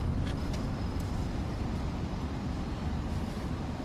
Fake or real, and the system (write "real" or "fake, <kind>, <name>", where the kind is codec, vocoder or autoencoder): real